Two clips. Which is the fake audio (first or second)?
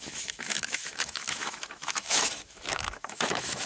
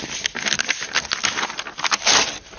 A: first